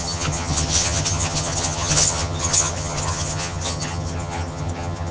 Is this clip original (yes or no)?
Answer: no